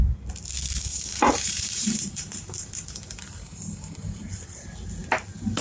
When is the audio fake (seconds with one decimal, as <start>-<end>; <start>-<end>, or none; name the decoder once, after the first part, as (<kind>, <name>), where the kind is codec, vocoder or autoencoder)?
0.9-4.3 (vocoder, BigVGAN v2)